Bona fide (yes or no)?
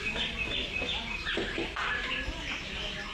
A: yes